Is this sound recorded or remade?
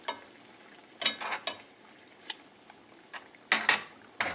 recorded